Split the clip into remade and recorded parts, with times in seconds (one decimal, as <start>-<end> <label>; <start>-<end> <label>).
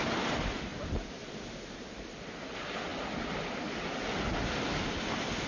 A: 0.0-5.5 recorded